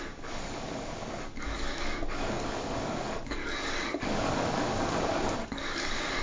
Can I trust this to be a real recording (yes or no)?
no